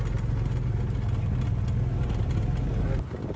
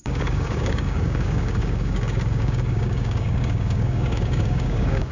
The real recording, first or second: first